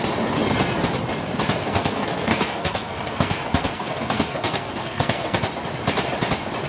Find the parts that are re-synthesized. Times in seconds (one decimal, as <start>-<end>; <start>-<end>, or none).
1.6-5.5

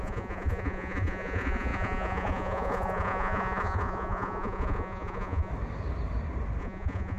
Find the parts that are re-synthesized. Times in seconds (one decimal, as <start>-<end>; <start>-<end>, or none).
0.0-5.5; 6.6-7.2

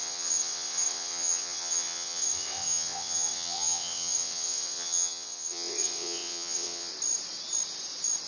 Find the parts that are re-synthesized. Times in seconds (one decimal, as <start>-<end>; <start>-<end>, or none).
0.0-6.9

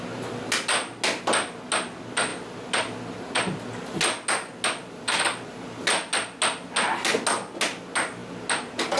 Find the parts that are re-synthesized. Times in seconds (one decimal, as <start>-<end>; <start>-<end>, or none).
none

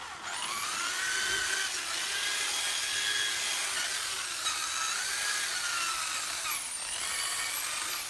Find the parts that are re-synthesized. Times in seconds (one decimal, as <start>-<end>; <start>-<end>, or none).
none

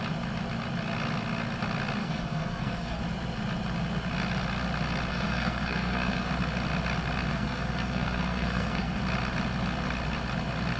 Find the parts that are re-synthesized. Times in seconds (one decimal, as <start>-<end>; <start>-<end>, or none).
2.0-3.0; 5.1-6.3; 7.3-9.0

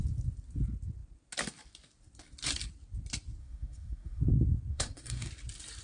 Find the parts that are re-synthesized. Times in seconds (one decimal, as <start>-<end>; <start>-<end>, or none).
3.4-4.2; 4.7-5.3

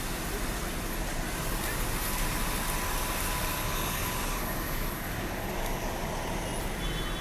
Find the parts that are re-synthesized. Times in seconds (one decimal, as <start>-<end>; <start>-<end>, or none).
3.5-6.1